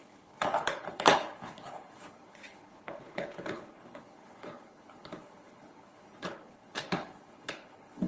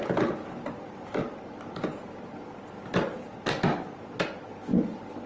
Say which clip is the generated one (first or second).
first